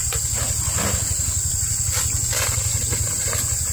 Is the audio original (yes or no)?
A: yes